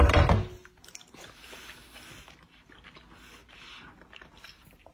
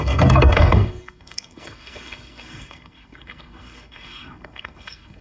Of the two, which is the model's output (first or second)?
second